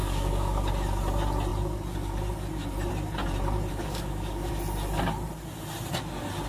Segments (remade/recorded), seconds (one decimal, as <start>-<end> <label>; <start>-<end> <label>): 0.0-0.7 remade; 0.7-3.7 recorded; 3.7-4.5 remade; 4.5-6.5 recorded